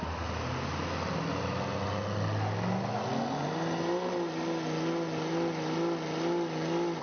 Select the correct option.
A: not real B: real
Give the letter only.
B